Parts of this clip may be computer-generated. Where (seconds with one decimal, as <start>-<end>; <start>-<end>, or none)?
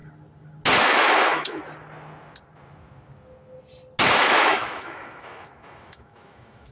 0.8-1.6; 4.1-6.7